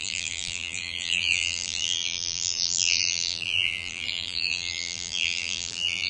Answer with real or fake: fake